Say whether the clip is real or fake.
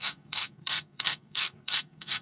fake